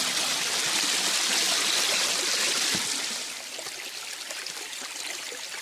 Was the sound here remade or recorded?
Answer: recorded